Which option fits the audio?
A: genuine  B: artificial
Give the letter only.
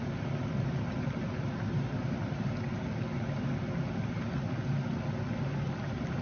A